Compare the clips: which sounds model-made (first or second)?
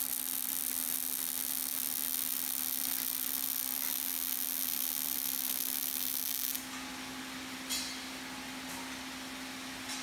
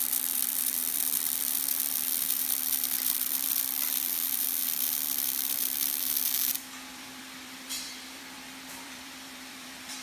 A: second